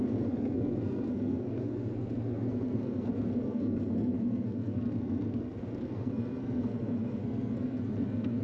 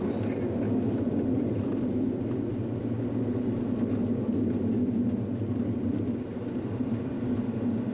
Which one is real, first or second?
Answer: second